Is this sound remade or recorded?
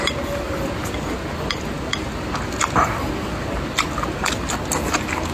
recorded